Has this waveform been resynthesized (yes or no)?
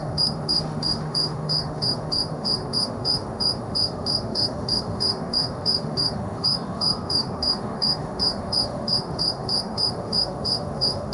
yes